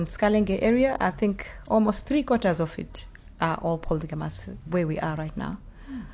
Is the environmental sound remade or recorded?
recorded